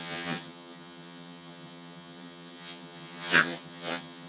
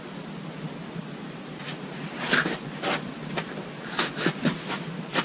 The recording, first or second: second